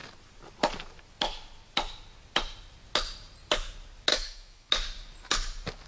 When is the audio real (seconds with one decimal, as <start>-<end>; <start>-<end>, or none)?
0.0-4.1; 4.7-5.9